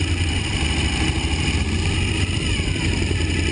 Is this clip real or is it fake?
fake